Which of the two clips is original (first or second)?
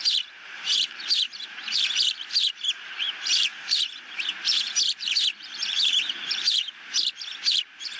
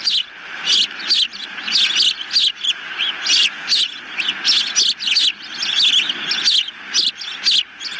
second